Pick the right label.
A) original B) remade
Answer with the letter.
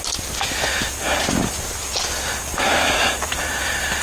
A